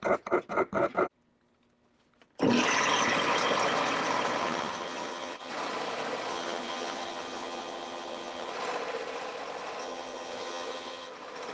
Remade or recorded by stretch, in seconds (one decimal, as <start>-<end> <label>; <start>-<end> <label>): 0.0-4.4 recorded; 4.4-5.5 remade; 5.5-6.3 recorded; 6.3-8.5 remade; 8.5-9.8 recorded; 9.8-11.1 remade; 11.1-11.5 recorded